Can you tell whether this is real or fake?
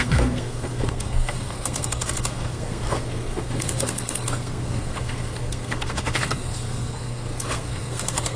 fake